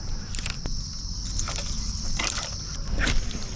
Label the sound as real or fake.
real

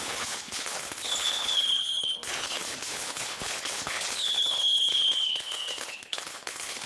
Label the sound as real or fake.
fake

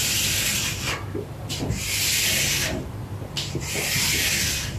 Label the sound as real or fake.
real